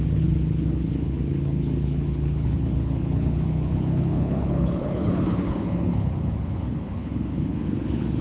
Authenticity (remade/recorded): remade